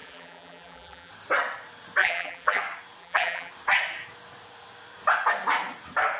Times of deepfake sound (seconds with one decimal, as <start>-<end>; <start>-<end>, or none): 0.0-1.1; 2.0-2.6; 3.0-3.5